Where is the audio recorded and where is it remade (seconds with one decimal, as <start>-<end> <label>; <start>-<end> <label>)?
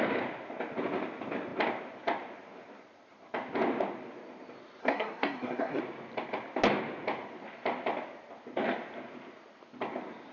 0.0-4.8 recorded; 4.8-5.8 remade; 5.8-10.3 recorded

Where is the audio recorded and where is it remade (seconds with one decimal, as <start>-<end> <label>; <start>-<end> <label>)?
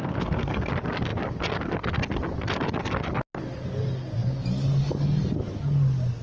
0.0-0.7 remade; 0.7-6.2 recorded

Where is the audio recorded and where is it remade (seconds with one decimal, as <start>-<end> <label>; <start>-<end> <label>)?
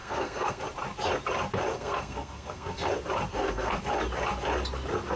0.0-0.6 remade; 0.6-1.7 recorded; 1.7-2.8 remade; 2.8-3.3 recorded; 3.3-3.8 remade; 3.8-5.2 recorded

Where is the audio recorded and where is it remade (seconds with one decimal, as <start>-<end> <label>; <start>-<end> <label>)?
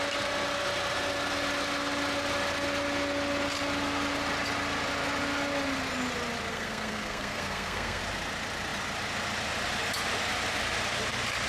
0.0-6.5 recorded; 6.5-8.0 remade; 8.0-11.5 recorded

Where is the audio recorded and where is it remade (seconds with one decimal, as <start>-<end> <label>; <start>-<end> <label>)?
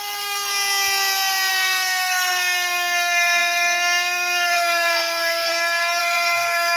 0.0-0.5 remade; 0.5-1.5 recorded; 1.5-5.5 remade; 5.5-6.0 recorded; 6.0-6.8 remade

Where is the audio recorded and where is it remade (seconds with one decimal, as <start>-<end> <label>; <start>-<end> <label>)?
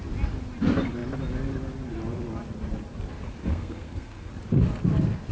0.0-3.4 recorded; 3.4-4.3 remade; 4.3-5.3 recorded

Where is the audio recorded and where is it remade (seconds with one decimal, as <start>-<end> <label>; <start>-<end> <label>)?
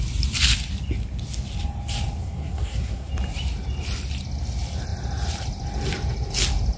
0.0-2.2 recorded; 2.2-3.1 remade; 3.1-6.8 recorded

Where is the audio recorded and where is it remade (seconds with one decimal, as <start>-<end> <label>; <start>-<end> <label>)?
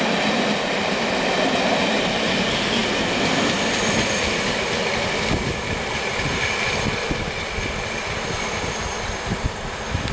0.0-10.1 recorded